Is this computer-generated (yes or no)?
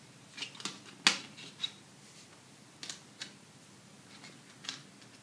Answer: no